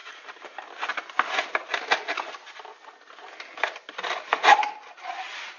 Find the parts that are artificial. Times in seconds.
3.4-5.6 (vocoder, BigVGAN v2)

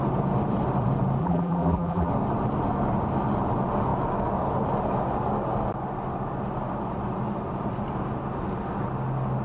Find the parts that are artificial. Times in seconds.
1.2-2.1 (vocoder, BigVGAN v2)

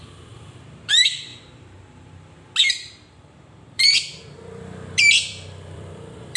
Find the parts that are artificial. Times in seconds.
0.0-1.3 (vocoder, BigVGAN v2); 2.7-6.4

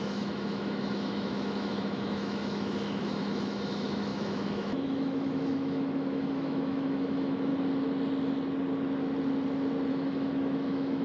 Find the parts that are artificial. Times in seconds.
0.0-7.5 (autoencoder, DAC-VAE); 9.9-11.0